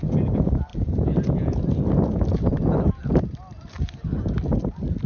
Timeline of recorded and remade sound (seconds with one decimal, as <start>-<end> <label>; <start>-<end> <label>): 0.0-5.1 recorded

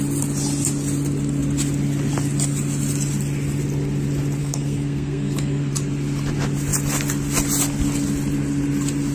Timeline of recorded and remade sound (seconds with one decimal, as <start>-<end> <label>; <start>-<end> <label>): 0.0-4.4 recorded; 4.4-5.7 remade; 5.7-9.1 recorded

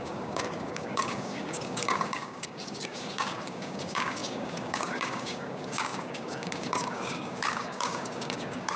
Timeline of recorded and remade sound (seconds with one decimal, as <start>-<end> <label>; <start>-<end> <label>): 0.0-8.8 remade

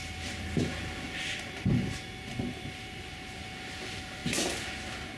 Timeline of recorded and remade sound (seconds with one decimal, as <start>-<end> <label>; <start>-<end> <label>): 0.0-3.1 remade; 3.1-5.2 recorded

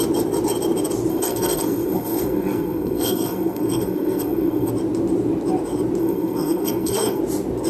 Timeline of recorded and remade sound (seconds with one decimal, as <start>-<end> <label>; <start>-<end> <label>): 0.0-1.1 recorded; 1.1-4.7 remade; 4.7-6.0 recorded; 6.0-7.2 remade; 7.2-7.7 recorded

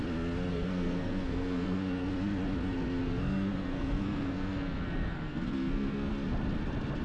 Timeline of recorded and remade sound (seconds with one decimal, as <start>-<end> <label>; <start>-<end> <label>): 0.0-0.5 recorded; 0.5-2.1 remade; 2.1-3.0 recorded; 3.0-6.1 remade; 6.1-7.0 recorded

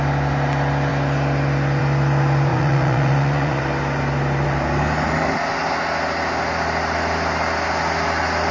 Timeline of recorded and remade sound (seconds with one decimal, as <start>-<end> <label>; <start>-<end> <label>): 0.0-2.5 recorded; 2.5-3.6 remade; 3.6-8.5 recorded